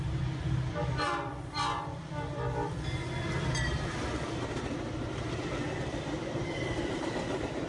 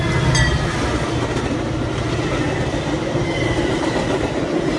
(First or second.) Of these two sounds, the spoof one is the first